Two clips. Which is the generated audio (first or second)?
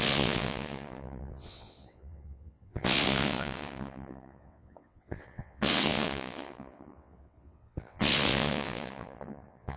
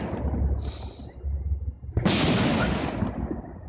first